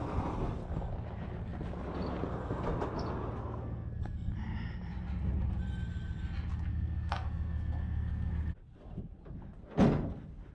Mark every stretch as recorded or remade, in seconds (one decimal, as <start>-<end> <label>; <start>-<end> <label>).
0.0-3.4 recorded; 3.4-4.3 remade; 4.3-6.7 recorded; 6.7-8.3 remade; 8.3-10.5 recorded

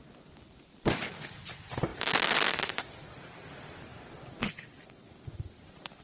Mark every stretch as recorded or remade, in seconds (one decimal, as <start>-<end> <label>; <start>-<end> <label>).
0.0-1.9 recorded; 1.9-2.7 remade; 2.7-6.0 recorded

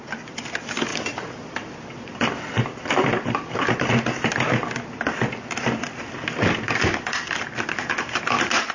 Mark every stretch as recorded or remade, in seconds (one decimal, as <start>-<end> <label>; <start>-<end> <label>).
0.0-0.9 recorded; 0.9-3.9 remade; 3.9-8.7 recorded

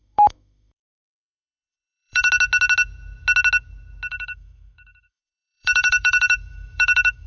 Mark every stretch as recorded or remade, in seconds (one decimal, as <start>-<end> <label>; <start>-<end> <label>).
0.0-2.3 remade; 2.3-4.1 recorded; 4.1-7.3 remade